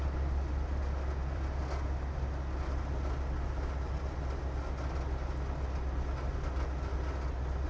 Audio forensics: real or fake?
real